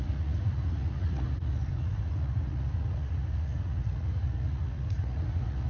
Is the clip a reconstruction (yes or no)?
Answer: yes